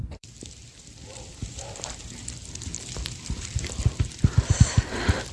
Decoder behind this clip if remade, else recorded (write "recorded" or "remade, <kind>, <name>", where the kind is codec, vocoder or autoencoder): remade, vocoder, BigVGAN v2